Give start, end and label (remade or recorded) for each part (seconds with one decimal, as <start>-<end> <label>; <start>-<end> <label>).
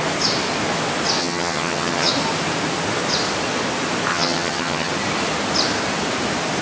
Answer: 0.0-1.2 recorded; 1.2-2.1 remade; 2.1-4.1 recorded; 4.1-4.9 remade; 4.9-6.6 recorded